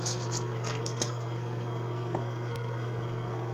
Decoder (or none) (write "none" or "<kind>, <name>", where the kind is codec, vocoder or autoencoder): codec, SNAC